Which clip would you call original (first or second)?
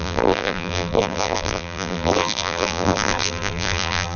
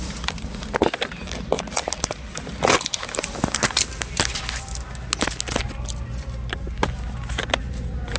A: second